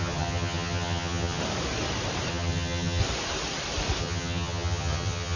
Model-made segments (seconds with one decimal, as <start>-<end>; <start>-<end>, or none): 0.0-1.4; 2.3-3.0; 4.0-5.4